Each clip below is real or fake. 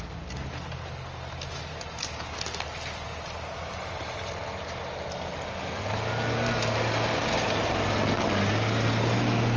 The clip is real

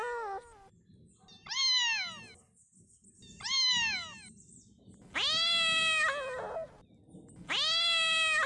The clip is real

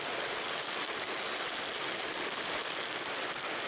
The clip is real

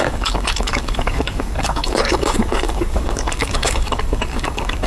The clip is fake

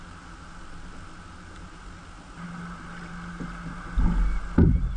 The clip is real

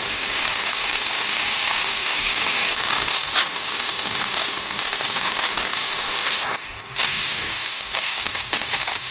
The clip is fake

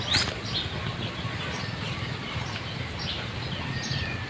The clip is real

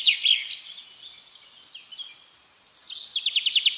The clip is real